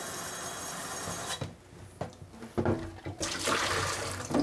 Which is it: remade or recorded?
recorded